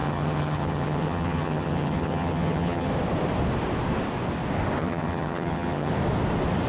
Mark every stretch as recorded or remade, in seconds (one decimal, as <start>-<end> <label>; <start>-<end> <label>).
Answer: 0.0-2.9 remade; 2.9-4.8 recorded; 4.8-5.9 remade; 5.9-6.7 recorded